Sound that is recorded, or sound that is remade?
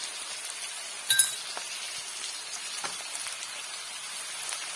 recorded